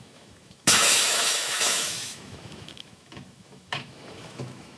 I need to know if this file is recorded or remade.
remade